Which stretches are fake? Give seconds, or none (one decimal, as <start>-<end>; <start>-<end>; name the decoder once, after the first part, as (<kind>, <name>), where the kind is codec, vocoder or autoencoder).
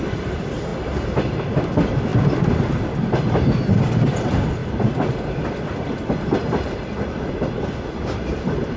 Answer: 0.0-0.7 (vocoder, BigVGAN v2); 1.4-2.1; 2.7-8.8